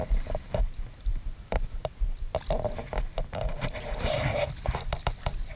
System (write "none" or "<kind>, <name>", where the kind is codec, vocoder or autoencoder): none